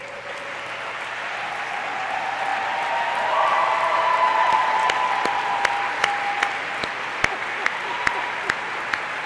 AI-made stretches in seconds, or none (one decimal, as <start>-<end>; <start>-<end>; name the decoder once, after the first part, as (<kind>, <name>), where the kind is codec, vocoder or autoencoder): none